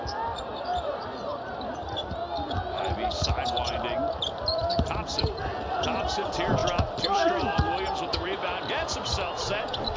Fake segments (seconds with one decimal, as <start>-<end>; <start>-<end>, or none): 0.0-0.5; 3.7-10.0